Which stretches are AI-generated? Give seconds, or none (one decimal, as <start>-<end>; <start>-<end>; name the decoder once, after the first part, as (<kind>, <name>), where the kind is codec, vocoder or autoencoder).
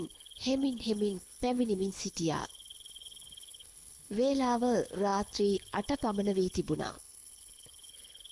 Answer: 0.0-8.3 (codec, HILCodec)